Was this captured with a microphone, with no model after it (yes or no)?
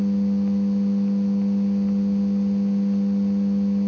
yes